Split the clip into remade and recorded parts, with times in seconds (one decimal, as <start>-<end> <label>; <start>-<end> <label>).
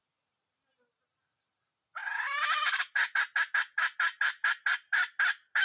0.0-5.6 recorded